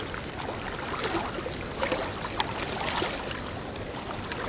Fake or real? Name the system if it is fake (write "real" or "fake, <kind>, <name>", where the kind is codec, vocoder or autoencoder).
real